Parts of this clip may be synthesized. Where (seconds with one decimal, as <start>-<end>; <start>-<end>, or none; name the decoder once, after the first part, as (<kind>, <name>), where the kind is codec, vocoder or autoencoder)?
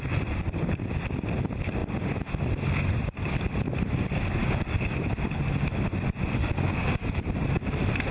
4.4-5.4 (codec, DAC); 6.4-7.3